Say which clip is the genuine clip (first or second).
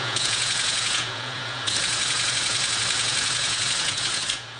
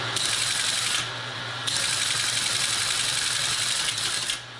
second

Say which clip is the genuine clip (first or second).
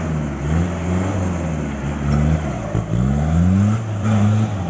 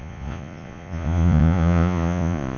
first